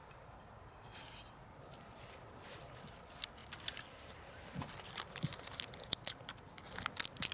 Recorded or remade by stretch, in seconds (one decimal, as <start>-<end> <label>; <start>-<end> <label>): 0.0-2.5 remade; 2.5-7.3 recorded

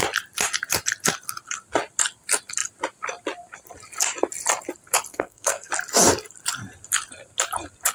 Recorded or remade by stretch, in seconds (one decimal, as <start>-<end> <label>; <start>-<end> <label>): 0.0-5.1 recorded; 5.1-5.7 remade; 5.7-7.9 recorded